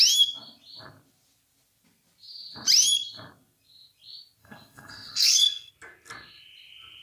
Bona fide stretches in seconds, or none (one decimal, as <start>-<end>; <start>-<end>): 0.0-4.4; 5.7-7.0